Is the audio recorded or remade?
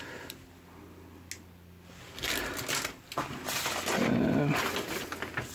recorded